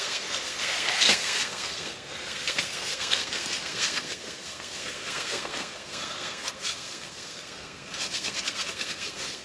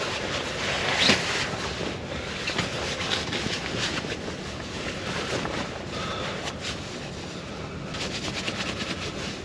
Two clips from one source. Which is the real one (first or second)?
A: second